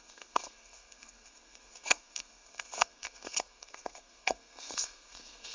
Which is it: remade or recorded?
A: remade